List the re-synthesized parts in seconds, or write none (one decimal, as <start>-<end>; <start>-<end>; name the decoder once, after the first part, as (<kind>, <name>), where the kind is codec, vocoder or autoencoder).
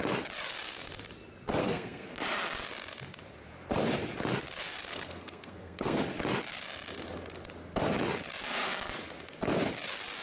1.6-2.2 (codec, SNAC); 4.9-6.0